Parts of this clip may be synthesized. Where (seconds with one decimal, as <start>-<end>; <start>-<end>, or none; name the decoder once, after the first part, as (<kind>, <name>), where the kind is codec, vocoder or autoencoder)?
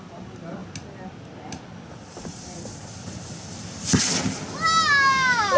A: none